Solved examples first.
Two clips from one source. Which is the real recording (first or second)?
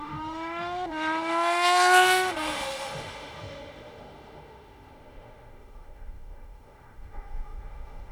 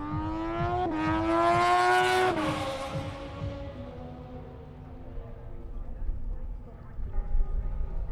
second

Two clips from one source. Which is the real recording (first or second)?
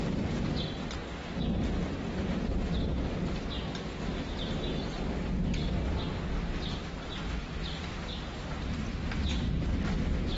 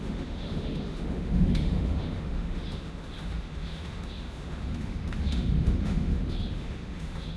first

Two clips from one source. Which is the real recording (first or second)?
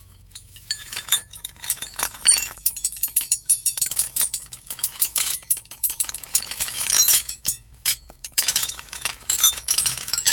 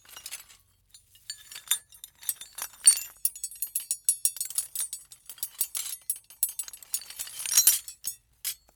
second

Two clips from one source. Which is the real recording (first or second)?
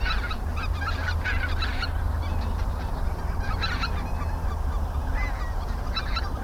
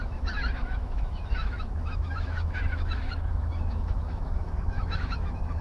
first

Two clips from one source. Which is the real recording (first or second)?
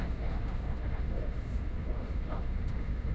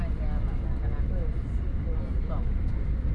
second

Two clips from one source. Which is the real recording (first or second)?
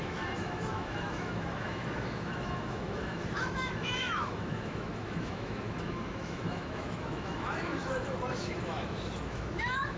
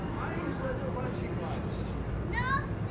second